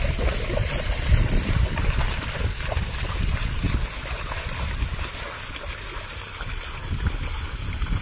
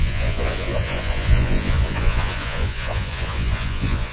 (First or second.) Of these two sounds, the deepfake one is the second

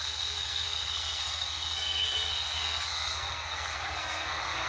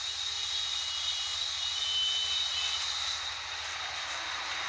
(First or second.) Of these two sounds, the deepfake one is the first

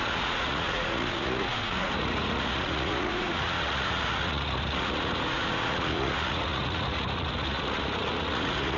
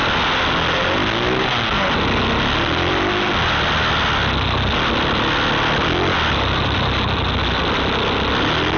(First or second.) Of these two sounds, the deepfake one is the first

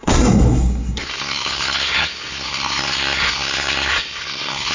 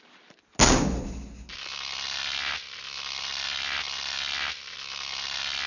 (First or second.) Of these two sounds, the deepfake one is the first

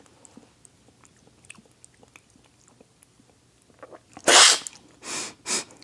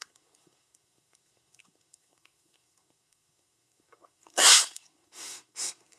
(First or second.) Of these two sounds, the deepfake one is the second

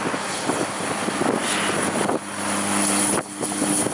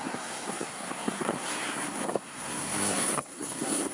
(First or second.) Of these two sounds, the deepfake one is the second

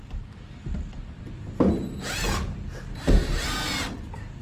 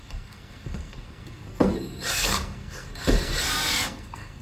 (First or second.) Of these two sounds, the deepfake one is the second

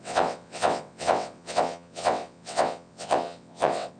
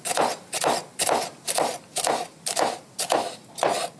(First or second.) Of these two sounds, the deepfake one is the first